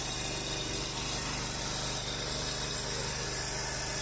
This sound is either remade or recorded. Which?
recorded